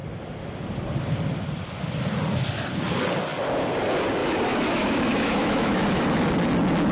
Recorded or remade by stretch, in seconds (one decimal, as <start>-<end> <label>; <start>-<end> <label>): 0.0-4.2 recorded; 4.2-6.2 remade; 6.2-6.9 recorded